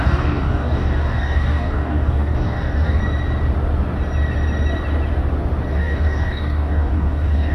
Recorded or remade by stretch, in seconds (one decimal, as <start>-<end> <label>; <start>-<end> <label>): 0.0-3.0 remade; 3.0-5.7 recorded; 5.7-7.5 remade